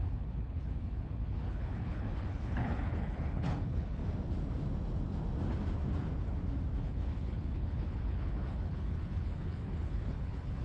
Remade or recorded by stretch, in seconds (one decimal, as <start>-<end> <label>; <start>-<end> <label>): 0.0-4.0 remade; 4.0-6.8 recorded; 6.8-10.6 remade